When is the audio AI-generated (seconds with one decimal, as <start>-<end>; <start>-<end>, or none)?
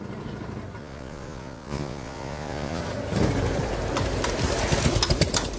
0.8-2.8